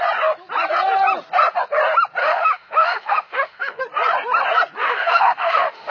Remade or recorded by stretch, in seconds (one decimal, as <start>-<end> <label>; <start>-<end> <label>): 0.0-2.2 recorded; 2.2-3.8 remade; 3.8-4.8 recorded; 4.8-5.9 remade

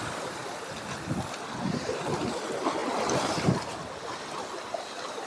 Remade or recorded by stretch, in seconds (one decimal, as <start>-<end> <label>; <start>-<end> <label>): 0.0-5.3 recorded

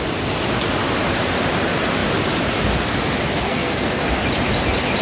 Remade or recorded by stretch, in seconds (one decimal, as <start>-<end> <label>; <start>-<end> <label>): 0.0-3.5 recorded; 3.5-4.0 remade; 4.0-5.0 recorded

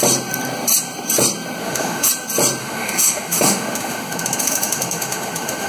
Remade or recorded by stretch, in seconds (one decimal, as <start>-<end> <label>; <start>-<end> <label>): 0.0-1.6 recorded; 1.6-2.1 remade; 2.1-2.6 recorded; 2.6-5.7 remade

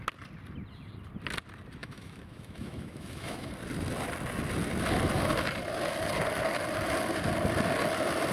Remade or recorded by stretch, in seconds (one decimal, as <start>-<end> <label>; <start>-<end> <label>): 0.0-1.8 recorded; 1.8-3.5 remade; 3.5-8.3 recorded

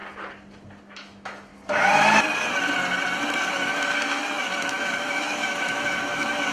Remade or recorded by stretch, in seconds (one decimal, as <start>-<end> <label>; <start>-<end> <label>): 0.0-0.8 recorded; 0.8-1.5 remade; 1.5-3.5 recorded; 3.5-6.5 remade